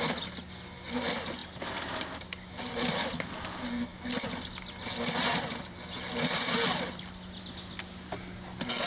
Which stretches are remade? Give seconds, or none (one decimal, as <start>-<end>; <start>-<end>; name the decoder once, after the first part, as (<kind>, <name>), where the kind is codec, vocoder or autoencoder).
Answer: none